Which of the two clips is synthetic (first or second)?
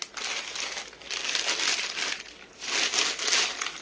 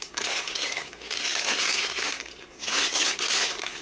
second